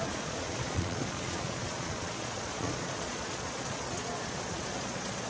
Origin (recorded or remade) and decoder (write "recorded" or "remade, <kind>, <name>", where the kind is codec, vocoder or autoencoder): remade, vocoder, Vocos